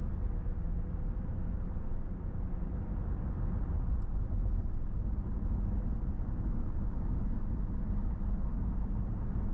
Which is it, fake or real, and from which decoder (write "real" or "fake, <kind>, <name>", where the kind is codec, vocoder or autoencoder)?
real